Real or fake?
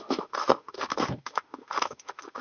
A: fake